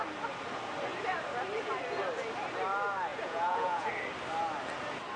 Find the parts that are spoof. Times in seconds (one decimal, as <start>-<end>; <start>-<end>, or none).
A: 3.1-3.9